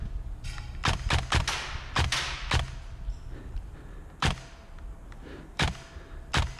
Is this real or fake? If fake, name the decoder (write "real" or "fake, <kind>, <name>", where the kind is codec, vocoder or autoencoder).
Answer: real